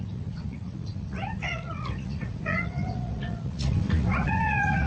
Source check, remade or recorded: remade